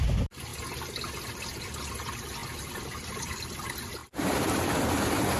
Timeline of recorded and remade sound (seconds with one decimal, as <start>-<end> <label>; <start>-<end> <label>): 0.0-2.4 recorded; 2.4-3.3 remade; 3.3-5.4 recorded